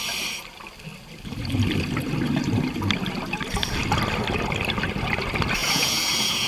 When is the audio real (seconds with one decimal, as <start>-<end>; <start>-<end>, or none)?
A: 0.0-5.6